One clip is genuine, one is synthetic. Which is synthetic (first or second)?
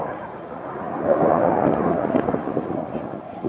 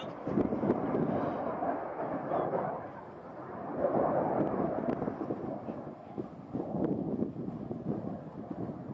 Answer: first